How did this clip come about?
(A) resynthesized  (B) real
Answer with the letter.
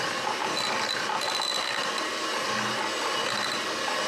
B